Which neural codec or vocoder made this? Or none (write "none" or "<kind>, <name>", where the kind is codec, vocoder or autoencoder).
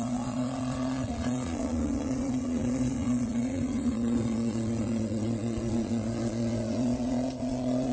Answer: vocoder, Vocos